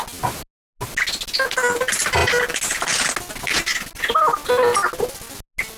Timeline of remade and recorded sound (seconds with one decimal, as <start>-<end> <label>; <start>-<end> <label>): 0.0-5.8 recorded